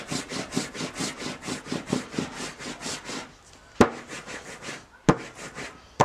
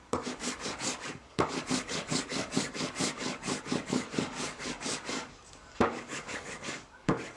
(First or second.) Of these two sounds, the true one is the first